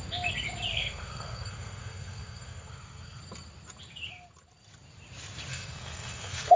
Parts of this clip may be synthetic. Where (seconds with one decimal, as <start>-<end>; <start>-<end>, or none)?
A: 0.7-3.2; 5.5-6.6